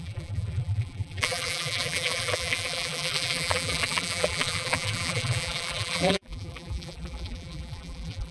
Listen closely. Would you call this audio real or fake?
fake